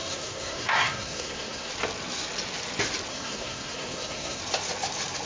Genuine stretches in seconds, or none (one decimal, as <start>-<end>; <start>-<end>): 1.7-3.1; 4.4-5.3